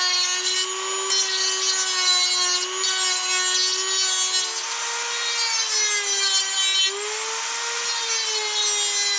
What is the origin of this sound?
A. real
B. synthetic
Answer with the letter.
A